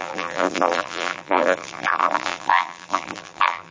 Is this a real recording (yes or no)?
no